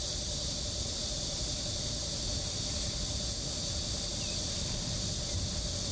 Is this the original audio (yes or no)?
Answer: yes